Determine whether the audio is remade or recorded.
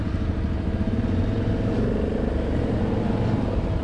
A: recorded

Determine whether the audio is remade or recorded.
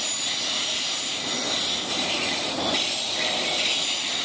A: recorded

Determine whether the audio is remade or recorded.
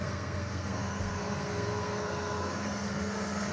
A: remade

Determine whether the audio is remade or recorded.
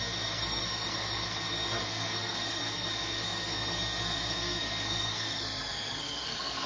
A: remade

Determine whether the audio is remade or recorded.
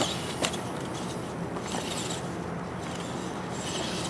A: recorded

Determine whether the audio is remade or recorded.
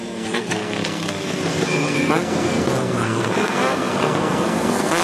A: remade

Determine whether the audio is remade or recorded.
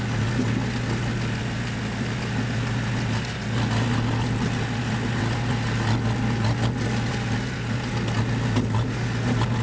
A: recorded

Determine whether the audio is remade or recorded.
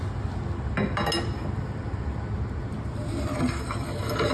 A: recorded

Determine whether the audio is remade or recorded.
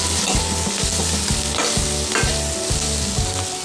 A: recorded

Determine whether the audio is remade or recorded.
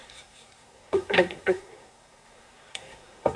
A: remade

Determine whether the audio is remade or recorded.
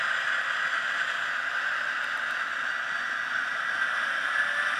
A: recorded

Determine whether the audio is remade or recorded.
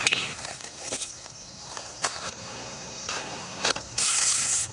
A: remade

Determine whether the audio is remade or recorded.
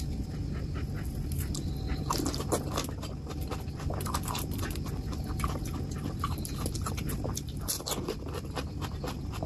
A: recorded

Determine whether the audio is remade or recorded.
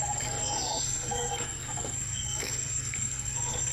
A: remade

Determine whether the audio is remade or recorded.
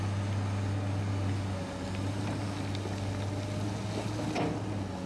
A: recorded